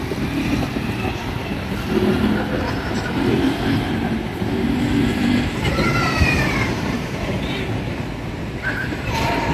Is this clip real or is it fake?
fake